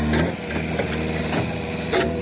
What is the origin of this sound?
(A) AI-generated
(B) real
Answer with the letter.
B